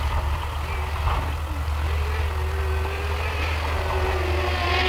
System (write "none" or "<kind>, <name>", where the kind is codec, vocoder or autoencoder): none